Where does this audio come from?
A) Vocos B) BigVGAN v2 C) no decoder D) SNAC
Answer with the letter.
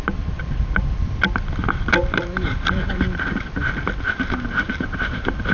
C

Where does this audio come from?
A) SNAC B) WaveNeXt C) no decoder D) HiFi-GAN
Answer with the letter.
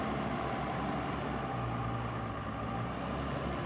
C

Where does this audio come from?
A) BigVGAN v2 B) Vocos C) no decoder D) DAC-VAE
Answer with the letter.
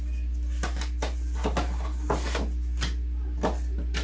C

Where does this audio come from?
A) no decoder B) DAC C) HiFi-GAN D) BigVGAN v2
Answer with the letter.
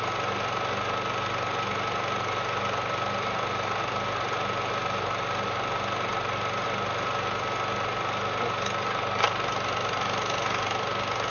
A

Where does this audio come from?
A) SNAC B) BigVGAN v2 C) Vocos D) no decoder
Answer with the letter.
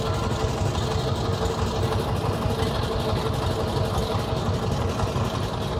D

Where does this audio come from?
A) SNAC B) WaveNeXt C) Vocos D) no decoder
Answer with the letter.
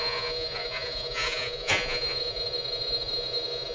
C